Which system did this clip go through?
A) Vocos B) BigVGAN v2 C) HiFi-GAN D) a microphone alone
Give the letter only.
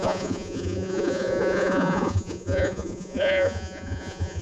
A